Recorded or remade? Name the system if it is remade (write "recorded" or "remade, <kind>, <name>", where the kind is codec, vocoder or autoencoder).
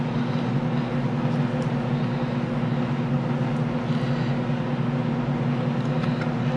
recorded